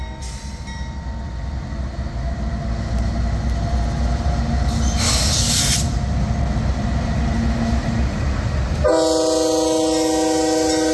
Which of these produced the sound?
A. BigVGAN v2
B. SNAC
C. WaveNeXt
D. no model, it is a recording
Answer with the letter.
D